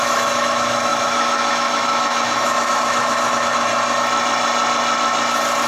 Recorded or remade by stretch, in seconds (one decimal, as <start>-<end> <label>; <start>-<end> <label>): 0.0-3.7 remade; 3.7-5.7 recorded